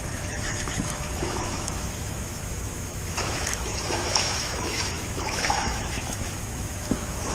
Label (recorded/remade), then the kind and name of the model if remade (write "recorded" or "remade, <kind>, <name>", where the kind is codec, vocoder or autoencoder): remade, autoencoder, DAC-VAE